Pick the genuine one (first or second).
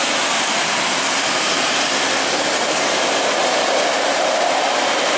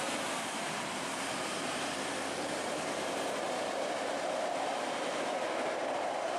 first